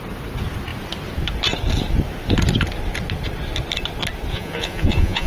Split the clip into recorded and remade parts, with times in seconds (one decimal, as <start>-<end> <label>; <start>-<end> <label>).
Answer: 0.0-4.3 recorded; 4.3-5.3 remade